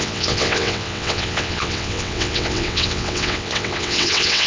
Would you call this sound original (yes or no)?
no